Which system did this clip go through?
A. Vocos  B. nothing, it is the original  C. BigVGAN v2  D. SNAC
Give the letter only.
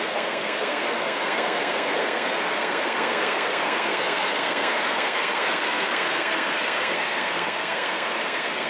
D